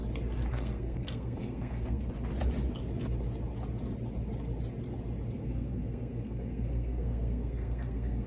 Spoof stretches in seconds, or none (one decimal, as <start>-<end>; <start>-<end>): 0.5-2.0; 5.4-8.3